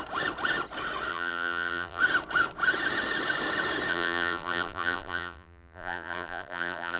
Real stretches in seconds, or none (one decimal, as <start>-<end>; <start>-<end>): 0.0-1.1; 2.0-3.9

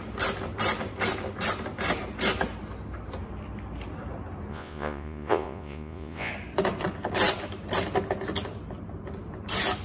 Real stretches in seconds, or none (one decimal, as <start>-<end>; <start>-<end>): 0.0-4.5; 6.3-9.8

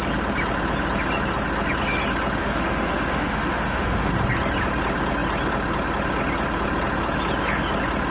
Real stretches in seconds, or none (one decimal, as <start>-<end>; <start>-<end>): 0.0-2.4; 4.1-8.1